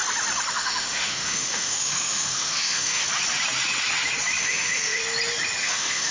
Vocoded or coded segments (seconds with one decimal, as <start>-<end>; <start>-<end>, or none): 0.5-3.0; 4.4-5.0; 5.6-6.1